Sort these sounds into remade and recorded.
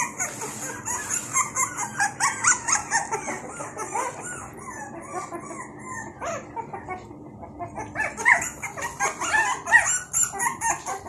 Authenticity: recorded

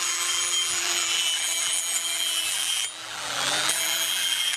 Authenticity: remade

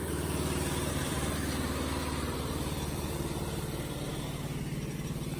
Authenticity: remade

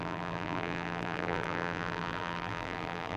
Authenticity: remade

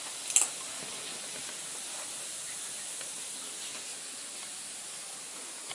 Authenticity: recorded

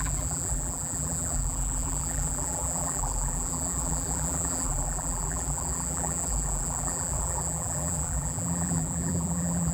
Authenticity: remade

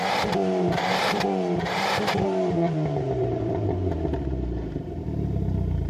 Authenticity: remade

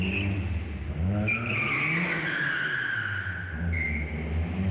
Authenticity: recorded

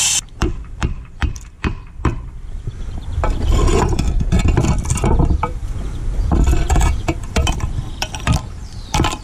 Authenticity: remade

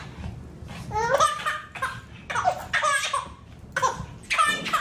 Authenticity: recorded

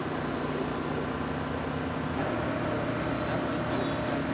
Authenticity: recorded